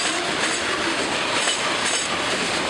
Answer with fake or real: real